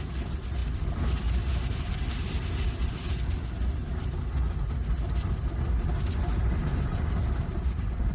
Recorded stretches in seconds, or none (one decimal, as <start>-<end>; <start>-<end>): 0.0-8.1

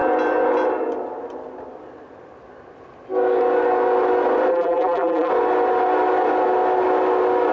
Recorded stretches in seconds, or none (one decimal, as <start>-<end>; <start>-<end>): 0.0-4.5; 5.3-7.5